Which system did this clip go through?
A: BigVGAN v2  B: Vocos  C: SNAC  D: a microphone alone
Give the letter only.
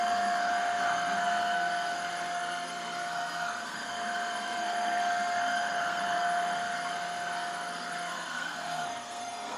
C